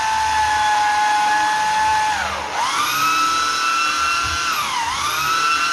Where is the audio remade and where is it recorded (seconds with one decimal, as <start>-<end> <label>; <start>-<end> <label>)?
0.0-5.7 recorded